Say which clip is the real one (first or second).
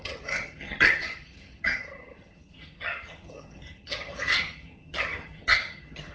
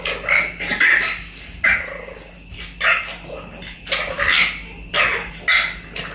second